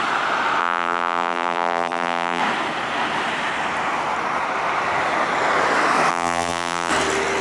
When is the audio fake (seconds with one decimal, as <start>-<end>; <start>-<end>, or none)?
0.6-2.4; 6.1-6.9